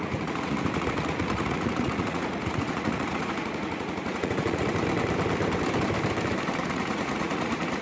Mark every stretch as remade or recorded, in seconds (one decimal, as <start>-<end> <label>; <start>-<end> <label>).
0.0-4.7 remade; 4.7-6.6 recorded; 6.6-7.8 remade